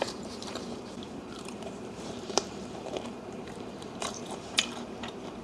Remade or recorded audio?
remade